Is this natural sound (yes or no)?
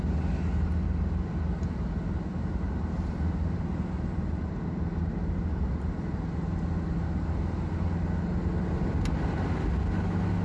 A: yes